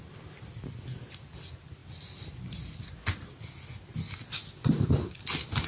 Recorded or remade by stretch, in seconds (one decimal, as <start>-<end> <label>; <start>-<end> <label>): 0.0-5.7 recorded